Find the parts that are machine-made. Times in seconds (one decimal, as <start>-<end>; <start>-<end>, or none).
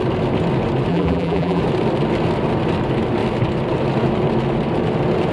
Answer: 0.9-1.6